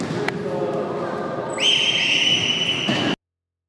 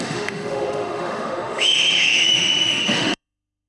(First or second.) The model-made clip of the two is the second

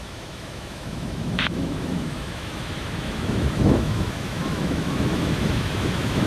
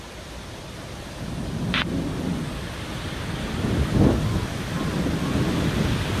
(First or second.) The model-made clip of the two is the first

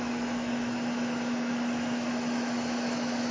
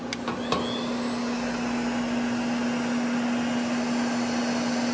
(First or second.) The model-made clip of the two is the first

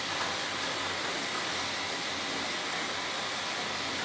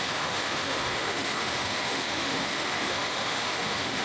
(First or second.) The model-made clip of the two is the second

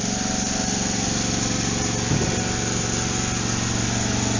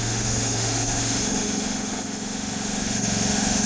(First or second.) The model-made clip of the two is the second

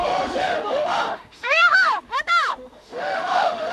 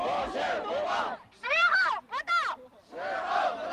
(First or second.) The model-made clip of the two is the first